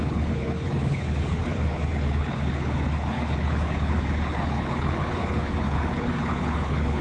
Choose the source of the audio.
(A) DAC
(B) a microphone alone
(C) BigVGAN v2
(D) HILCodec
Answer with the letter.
D